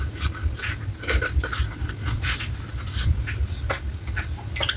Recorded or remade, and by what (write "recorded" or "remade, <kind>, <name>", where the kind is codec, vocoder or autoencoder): recorded